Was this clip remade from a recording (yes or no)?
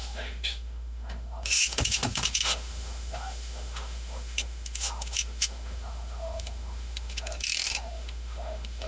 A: yes